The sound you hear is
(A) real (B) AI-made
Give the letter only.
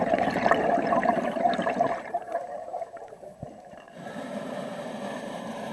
B